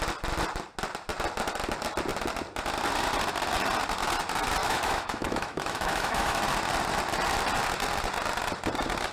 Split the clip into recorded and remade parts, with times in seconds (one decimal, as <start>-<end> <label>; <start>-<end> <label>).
0.0-4.6 recorded; 4.6-6.4 remade; 6.4-9.1 recorded